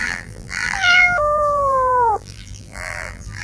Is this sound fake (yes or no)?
yes